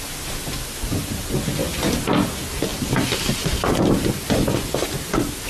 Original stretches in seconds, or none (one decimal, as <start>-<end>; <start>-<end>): 0.0-1.6; 2.1-2.7; 4.1-5.5